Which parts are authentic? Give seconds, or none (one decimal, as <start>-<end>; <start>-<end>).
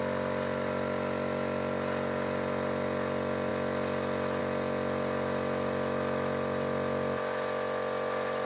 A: 0.0-8.5